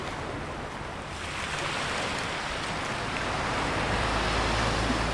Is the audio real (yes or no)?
yes